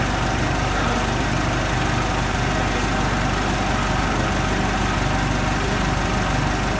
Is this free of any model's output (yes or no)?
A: yes